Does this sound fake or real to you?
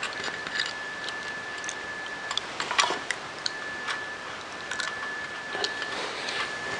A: fake